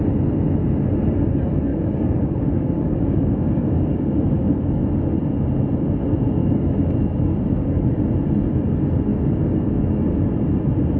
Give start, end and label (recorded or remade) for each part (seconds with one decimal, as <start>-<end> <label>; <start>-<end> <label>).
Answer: 0.0-1.7 recorded; 1.7-4.8 remade; 4.8-6.4 recorded; 6.4-7.9 remade; 7.9-9.1 recorded; 9.1-10.2 remade; 10.2-11.0 recorded

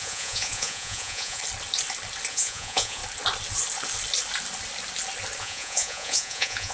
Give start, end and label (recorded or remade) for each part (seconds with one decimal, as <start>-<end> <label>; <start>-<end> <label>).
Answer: 0.0-1.4 remade; 1.4-2.3 recorded; 2.3-3.0 remade; 3.0-5.4 recorded; 5.4-6.7 remade

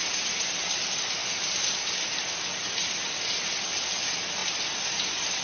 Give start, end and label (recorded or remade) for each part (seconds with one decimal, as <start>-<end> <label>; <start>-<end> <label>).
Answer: 0.0-4.4 recorded; 4.4-5.4 remade

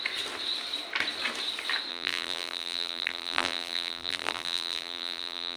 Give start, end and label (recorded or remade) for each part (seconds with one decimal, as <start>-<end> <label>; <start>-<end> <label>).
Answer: 0.0-1.9 recorded; 1.9-5.6 remade